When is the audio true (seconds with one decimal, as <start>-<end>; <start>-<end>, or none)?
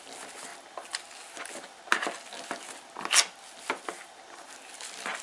0.0-5.2